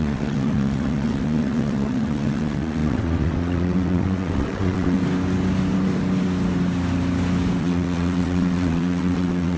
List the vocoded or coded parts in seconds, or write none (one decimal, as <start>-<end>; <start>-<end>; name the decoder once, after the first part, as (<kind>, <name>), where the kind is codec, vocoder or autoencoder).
0.0-5.0 (vocoder, WaveNeXt); 7.6-9.6